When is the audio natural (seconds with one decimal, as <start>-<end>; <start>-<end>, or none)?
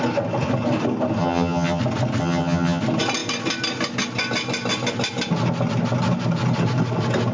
0.0-1.2; 1.8-2.2; 2.8-7.3